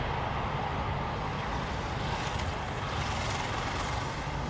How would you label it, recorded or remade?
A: recorded